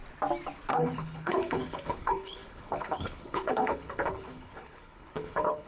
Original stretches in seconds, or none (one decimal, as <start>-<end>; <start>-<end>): 0.0-0.7